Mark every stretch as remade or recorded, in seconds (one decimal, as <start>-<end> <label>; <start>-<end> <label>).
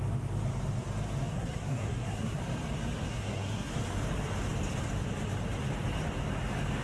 0.0-1.3 recorded; 1.3-2.4 remade; 2.4-3.1 recorded; 3.1-3.7 remade; 3.7-6.8 recorded